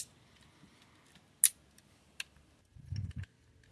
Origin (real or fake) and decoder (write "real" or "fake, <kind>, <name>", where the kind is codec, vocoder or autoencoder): real